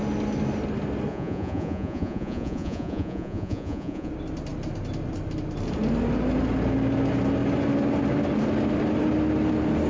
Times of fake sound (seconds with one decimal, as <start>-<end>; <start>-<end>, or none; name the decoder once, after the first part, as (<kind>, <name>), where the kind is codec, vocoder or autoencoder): 1.1-4.1 (vocoder, Vocos)

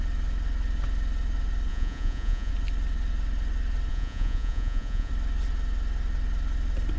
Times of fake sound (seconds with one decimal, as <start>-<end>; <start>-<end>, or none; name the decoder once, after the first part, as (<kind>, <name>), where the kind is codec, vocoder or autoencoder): 1.7-2.5 (vocoder, Vocos); 3.9-5.1

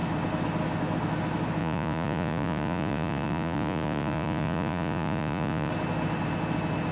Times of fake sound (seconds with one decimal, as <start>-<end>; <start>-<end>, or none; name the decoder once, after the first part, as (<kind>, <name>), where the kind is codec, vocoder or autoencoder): 1.6-5.7 (vocoder, Vocos)